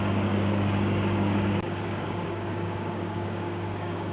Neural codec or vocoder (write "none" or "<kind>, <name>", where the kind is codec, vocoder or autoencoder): codec, DAC